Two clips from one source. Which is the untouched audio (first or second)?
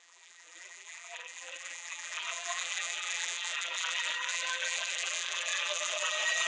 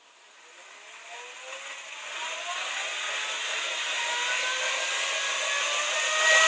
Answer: second